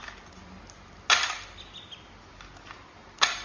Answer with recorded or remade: recorded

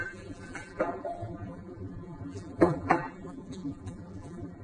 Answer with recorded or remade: remade